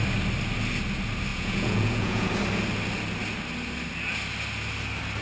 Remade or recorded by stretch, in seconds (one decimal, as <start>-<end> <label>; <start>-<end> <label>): 0.0-1.3 recorded; 1.3-2.3 remade; 2.3-5.2 recorded